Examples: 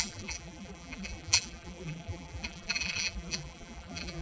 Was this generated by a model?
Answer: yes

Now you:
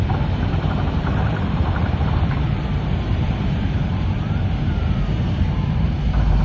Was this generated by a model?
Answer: yes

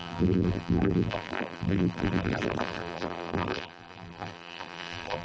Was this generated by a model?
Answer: yes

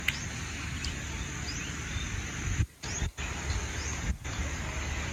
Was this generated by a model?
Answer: no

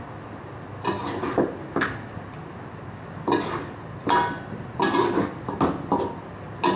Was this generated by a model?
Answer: no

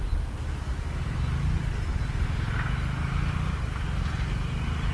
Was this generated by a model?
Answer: no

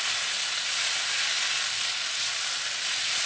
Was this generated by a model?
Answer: no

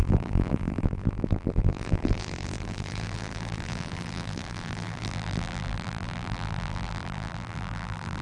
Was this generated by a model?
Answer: yes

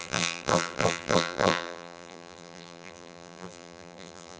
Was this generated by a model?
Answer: yes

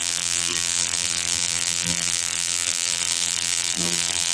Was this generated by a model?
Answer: yes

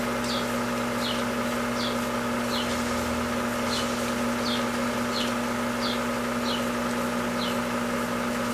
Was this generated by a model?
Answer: no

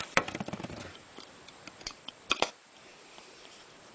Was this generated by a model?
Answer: yes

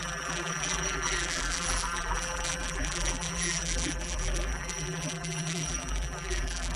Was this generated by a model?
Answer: yes